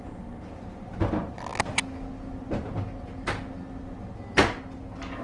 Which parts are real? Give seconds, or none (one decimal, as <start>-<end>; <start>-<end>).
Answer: 0.0-5.2